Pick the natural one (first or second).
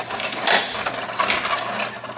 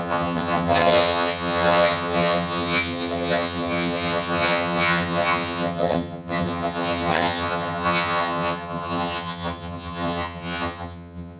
first